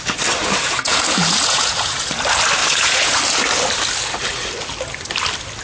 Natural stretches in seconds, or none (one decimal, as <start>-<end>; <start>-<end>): 0.0-0.4; 2.1-2.6; 3.2-5.6